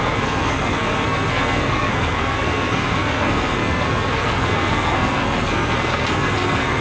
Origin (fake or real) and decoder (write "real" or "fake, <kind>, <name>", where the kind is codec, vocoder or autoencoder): fake, codec, SNAC